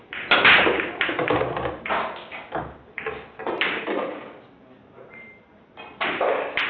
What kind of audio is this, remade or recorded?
recorded